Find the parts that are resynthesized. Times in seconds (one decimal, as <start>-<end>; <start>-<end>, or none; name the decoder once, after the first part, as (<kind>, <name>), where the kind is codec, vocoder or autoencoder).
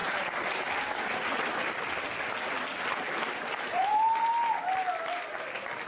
none